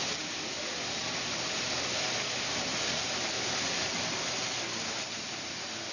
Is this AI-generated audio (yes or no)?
no